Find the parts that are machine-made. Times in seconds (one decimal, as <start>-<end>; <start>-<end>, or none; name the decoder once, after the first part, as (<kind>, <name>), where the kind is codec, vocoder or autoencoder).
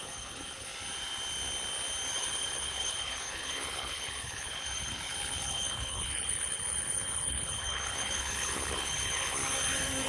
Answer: 0.0-0.7 (codec, HILCodec); 2.1-9.4